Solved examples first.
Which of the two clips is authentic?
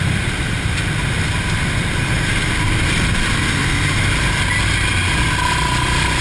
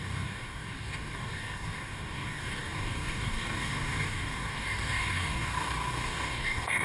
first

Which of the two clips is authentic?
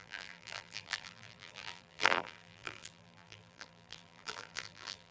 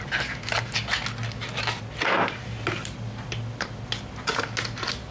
second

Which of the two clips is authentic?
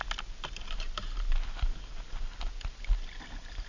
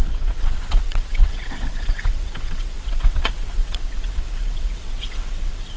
first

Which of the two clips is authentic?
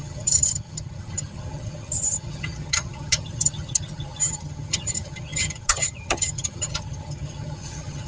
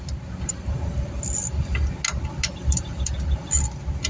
second